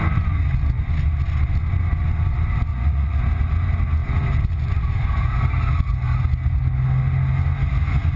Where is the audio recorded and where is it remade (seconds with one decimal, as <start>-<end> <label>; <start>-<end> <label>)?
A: 0.0-2.7 recorded; 2.7-3.2 remade; 3.2-8.2 recorded